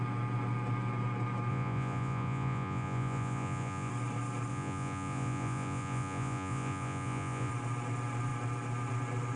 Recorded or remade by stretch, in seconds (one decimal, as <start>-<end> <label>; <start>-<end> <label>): 0.0-1.5 recorded; 1.5-3.9 remade; 3.9-4.5 recorded; 4.5-7.5 remade; 7.5-9.4 recorded